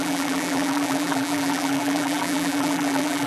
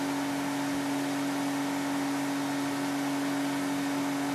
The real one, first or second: second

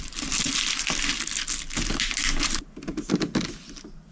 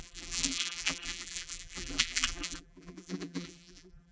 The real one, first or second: first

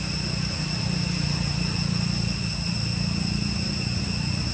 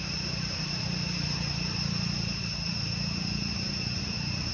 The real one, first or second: first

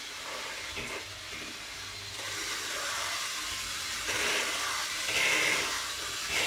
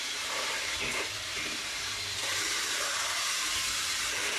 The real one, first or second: first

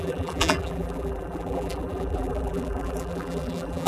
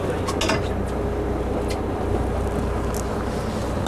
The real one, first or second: second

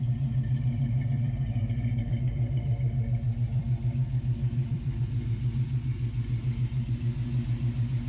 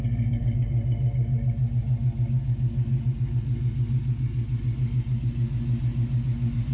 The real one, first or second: second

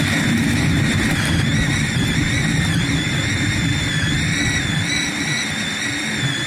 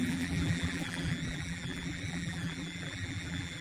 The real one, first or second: first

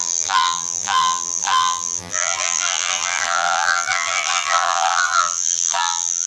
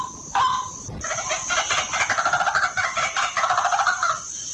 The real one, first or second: second